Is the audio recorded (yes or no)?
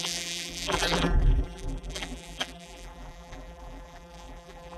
no